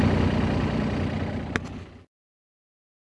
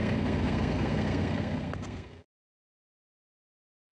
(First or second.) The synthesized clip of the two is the second